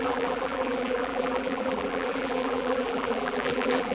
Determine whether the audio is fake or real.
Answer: fake